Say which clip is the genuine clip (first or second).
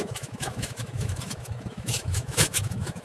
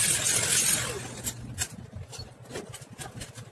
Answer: second